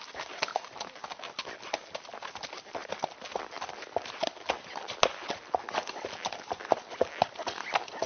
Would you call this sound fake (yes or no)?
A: no